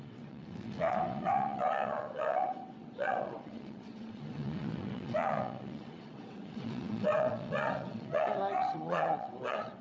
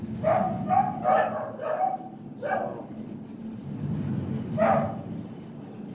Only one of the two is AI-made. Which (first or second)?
first